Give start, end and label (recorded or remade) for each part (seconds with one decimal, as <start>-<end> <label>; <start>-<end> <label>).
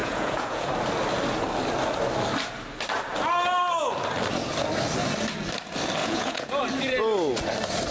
0.0-0.7 remade; 0.7-6.0 recorded; 6.0-6.6 remade; 6.6-7.9 recorded